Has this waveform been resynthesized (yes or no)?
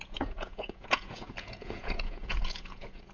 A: yes